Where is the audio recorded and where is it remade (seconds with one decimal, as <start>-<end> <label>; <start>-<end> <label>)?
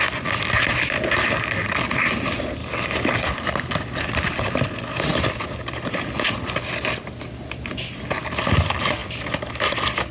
0.0-2.6 recorded; 2.6-3.4 remade; 3.4-10.1 recorded